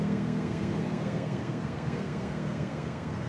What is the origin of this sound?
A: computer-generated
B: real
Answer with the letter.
A